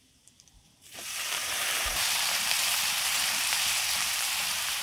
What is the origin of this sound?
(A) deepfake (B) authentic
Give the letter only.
A